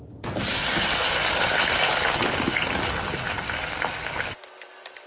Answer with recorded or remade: recorded